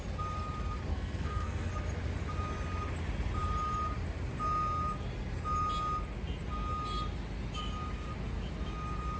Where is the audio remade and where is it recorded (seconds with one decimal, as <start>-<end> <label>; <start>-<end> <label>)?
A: 0.0-0.9 recorded; 0.9-1.7 remade; 1.7-9.2 recorded